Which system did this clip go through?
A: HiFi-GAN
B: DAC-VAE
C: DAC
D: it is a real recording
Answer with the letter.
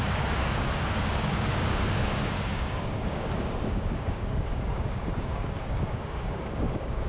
C